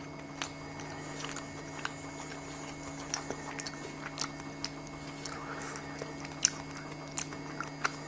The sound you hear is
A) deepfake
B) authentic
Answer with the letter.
B